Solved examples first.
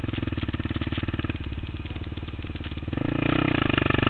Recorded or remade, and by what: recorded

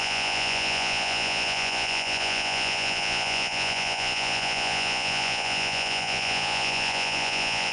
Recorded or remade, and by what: remade, vocoder, Vocos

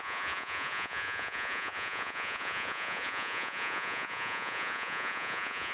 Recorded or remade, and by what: remade, vocoder, Vocos